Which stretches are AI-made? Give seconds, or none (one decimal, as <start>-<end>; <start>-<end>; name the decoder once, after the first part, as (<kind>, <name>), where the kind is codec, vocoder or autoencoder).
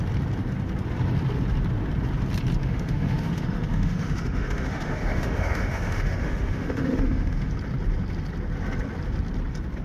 2.6-7.5 (autoencoder, DAC-VAE)